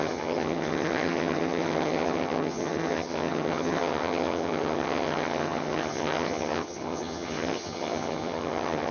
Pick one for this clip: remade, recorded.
remade